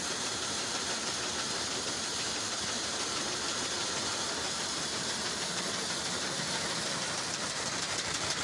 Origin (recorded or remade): remade